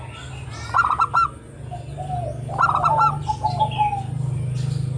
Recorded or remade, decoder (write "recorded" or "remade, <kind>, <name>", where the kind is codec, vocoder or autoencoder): recorded